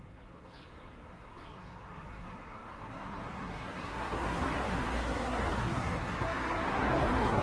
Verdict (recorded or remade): remade